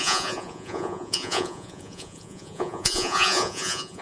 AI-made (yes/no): yes